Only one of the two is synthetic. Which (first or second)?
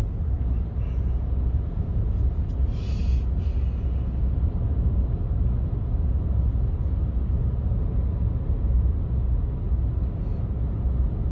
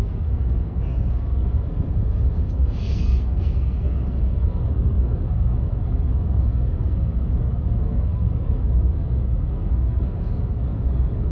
second